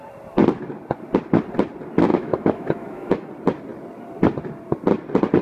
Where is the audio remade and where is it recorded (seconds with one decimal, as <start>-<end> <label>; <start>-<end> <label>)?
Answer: 0.0-2.1 recorded; 2.1-3.3 remade; 3.3-5.4 recorded